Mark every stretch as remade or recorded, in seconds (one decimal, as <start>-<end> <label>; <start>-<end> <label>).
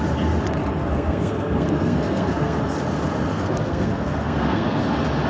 0.0-0.8 recorded; 0.8-2.6 remade; 2.6-3.3 recorded; 3.3-4.8 remade; 4.8-5.3 recorded